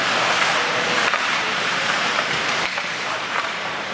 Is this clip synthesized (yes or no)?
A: yes